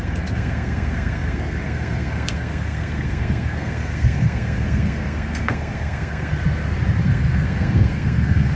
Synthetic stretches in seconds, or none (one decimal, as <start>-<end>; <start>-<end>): 0.0-6.3; 7.0-8.6